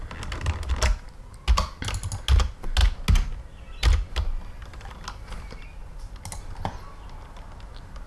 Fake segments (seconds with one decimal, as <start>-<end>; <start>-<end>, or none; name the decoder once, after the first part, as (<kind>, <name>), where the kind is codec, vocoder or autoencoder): none